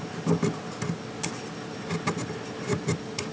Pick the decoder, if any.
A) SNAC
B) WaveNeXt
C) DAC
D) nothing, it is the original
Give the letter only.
D